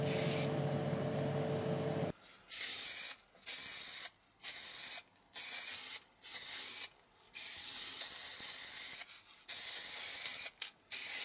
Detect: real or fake real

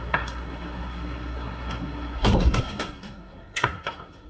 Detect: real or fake fake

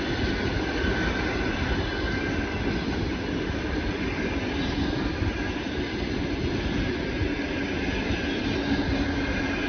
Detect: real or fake real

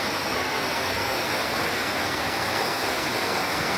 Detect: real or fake fake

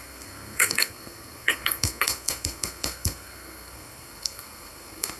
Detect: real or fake fake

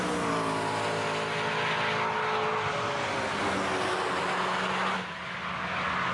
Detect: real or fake real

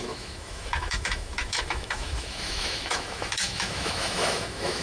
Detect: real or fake fake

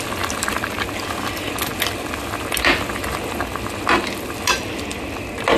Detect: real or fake real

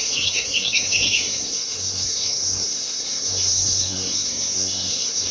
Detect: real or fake fake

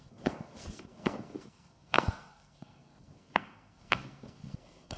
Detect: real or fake fake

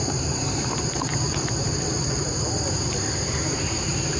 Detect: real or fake fake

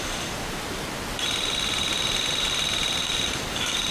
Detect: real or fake real